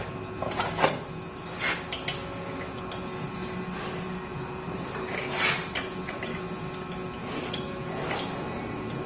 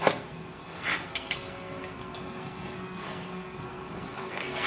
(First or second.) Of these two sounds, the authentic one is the first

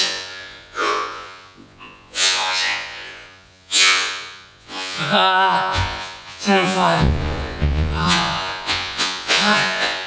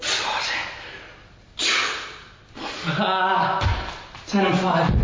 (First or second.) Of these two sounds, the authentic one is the second